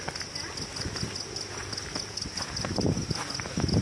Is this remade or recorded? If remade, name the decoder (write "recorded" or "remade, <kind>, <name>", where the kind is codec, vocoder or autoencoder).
recorded